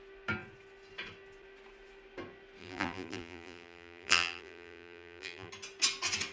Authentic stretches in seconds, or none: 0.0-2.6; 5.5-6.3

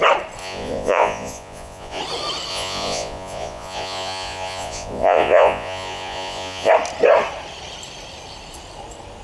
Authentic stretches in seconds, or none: 0.0-0.4; 2.0-2.5; 6.7-9.2

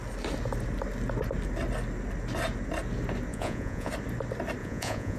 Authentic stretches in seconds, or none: 0.0-3.3; 3.9-4.6

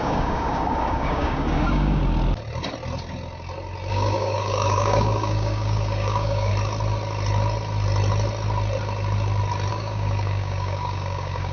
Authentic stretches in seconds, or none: 2.0-3.9; 6.5-9.7

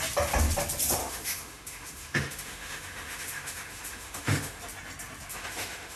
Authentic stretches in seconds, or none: 0.0-1.0; 4.6-5.3